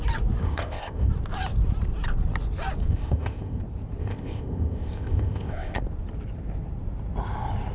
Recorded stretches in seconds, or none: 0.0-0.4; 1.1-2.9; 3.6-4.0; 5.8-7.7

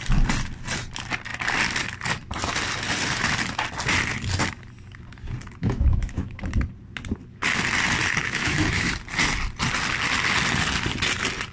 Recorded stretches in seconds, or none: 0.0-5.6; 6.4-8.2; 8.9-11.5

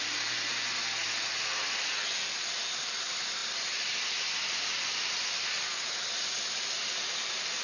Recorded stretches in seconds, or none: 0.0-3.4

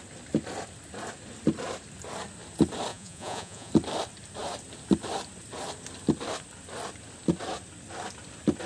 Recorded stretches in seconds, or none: 0.0-2.9; 3.7-8.7

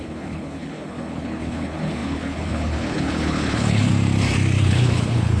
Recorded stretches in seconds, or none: 3.9-4.6